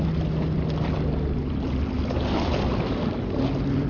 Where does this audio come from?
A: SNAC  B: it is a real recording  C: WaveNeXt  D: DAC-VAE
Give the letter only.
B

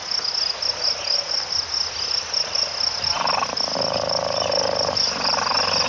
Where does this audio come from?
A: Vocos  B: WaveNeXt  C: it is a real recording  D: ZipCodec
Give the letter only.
C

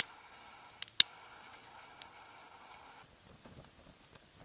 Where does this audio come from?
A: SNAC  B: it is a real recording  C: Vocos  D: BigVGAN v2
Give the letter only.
B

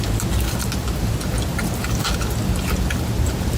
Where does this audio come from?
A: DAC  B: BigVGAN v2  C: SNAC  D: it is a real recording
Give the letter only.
D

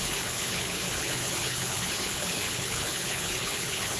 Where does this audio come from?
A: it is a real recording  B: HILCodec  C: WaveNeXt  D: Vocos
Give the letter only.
B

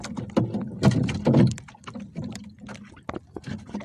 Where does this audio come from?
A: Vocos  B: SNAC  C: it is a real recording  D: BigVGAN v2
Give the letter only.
C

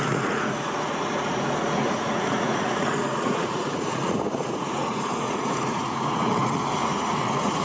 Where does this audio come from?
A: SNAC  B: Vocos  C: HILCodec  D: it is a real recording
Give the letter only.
B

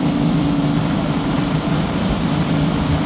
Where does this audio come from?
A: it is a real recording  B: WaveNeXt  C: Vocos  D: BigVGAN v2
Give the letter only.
D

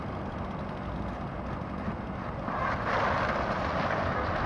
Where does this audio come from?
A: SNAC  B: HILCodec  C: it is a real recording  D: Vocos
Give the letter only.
C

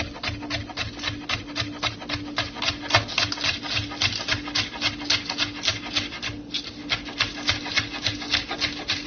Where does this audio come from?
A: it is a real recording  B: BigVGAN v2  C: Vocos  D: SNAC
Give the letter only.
A